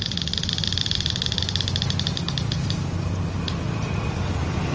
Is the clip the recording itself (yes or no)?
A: yes